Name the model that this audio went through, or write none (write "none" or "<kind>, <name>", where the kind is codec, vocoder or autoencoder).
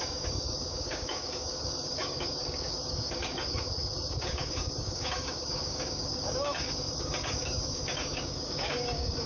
codec, DAC